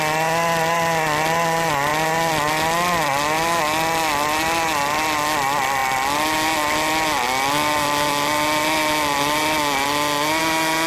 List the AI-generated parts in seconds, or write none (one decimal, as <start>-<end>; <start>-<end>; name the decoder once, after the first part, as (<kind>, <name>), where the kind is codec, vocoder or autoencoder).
none